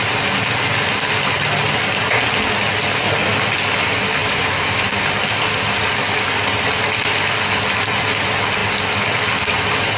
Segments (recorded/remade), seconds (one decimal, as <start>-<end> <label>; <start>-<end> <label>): 0.0-4.2 recorded; 4.2-4.8 remade; 4.8-10.0 recorded

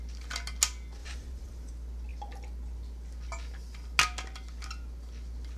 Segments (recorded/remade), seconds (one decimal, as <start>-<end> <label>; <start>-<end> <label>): 0.0-1.0 recorded; 1.0-1.7 remade; 1.7-5.6 recorded

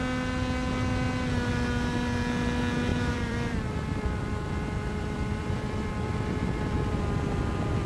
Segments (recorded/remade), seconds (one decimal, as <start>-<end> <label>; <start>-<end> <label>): 0.0-2.9 recorded; 2.9-7.0 remade; 7.0-7.9 recorded

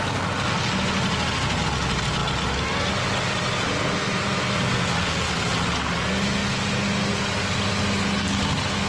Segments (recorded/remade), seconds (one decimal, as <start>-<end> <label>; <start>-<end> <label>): 0.0-8.9 recorded

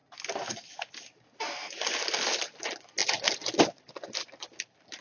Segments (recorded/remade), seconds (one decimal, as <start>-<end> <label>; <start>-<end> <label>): 0.0-0.7 recorded; 0.7-1.6 remade; 1.6-2.4 recorded; 2.4-3.0 remade; 3.0-3.6 recorded; 3.6-5.0 remade

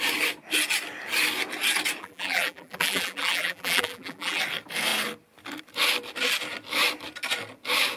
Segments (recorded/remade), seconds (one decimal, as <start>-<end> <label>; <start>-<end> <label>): 0.0-2.0 recorded; 2.0-4.4 remade; 4.4-8.0 recorded

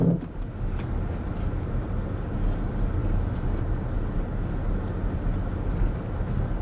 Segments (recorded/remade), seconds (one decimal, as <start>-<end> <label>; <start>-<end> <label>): 0.0-6.6 recorded